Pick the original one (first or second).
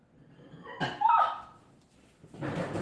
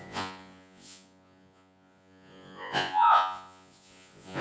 first